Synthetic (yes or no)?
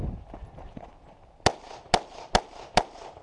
no